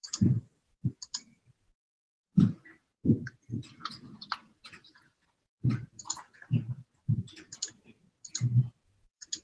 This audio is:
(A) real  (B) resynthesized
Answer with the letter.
B